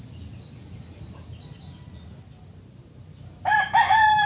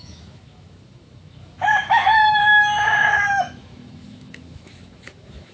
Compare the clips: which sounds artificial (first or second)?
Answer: second